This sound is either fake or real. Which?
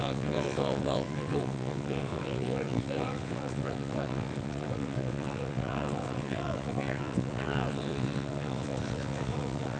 fake